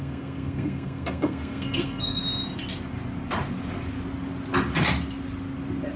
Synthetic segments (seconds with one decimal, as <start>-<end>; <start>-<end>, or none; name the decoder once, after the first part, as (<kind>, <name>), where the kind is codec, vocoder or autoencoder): 0.0-2.2 (codec, SNAC)